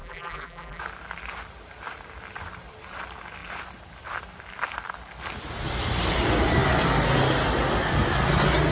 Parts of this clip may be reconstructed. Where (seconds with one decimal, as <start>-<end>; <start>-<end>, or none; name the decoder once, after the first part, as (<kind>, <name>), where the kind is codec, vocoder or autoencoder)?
0.0-0.8 (vocoder, BigVGAN v2)